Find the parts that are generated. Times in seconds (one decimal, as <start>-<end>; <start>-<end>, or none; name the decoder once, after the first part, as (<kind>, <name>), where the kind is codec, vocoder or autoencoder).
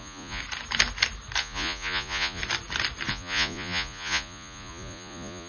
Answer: 0.0-0.4 (vocoder, Vocos); 1.4-2.4; 3.1-5.5